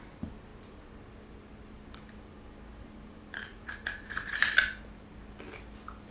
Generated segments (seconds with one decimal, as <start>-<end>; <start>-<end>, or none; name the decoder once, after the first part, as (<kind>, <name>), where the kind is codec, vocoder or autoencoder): 3.5-4.3 (vocoder, Vocos)